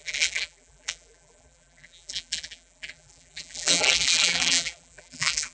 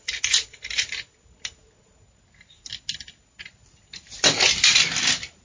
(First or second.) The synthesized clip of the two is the first